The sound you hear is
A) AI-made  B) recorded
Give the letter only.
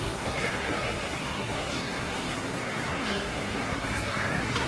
A